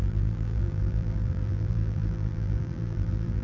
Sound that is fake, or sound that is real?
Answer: fake